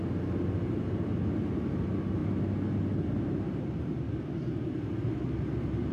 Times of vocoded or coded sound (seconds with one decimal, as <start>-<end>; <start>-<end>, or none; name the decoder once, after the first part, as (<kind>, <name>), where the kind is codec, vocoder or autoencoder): none